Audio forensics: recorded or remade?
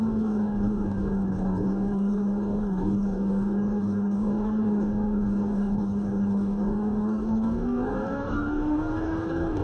remade